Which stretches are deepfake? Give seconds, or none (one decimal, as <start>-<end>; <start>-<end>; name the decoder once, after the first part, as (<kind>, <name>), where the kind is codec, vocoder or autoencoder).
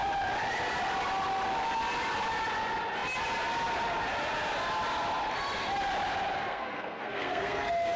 6.5-8.0 (codec, SNAC)